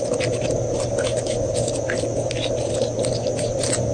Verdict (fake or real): real